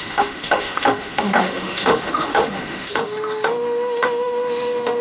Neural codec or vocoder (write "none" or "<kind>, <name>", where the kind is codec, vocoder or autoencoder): autoencoder, DAC-VAE